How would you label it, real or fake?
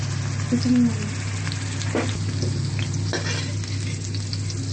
real